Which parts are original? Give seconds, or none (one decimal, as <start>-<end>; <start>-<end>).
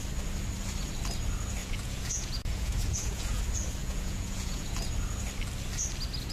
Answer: 0.0-1.6; 3.4-3.8; 4.9-6.3